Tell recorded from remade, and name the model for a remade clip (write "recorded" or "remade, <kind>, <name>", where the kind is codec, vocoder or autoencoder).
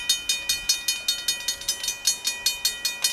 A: recorded